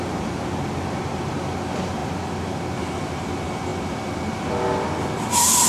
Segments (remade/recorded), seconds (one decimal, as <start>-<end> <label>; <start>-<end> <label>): 0.0-5.7 recorded